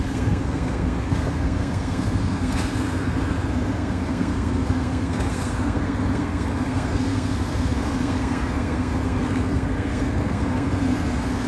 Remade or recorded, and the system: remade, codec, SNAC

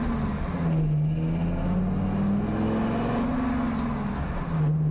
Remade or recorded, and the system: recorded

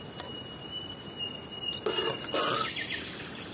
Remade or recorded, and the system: recorded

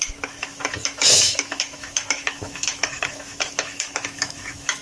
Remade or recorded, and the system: remade, autoencoder, DAC-VAE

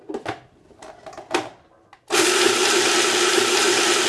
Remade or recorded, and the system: recorded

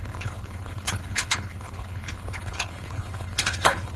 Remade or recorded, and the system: remade, codec, HILCodec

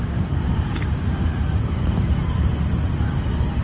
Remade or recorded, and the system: remade, vocoder, BigVGAN v2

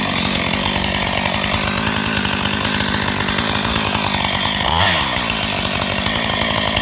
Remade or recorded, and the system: recorded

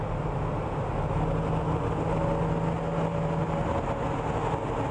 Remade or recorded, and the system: recorded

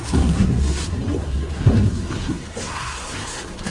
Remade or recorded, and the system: remade, codec, SNAC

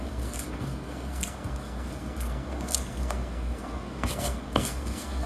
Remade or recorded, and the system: remade, codec, SNAC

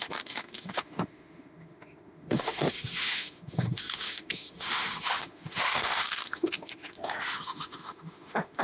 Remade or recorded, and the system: remade, autoencoder, DAC-VAE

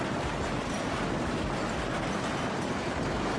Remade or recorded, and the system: recorded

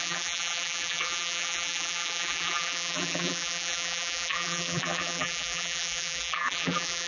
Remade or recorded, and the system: remade, vocoder, BigVGAN v2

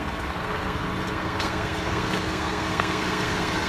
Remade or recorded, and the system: remade, codec, SNAC